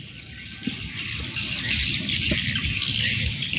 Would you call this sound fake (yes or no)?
no